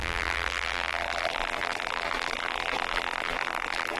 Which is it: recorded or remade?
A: remade